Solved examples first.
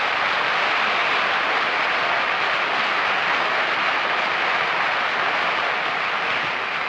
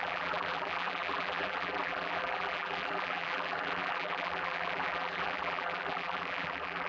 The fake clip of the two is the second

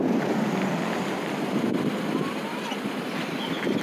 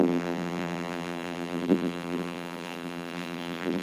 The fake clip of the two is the second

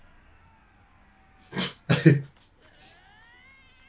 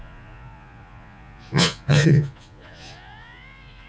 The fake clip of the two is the second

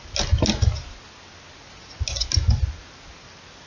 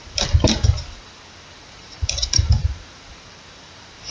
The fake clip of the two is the second